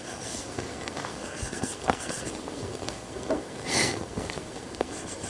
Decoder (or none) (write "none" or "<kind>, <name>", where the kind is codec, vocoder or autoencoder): codec, SNAC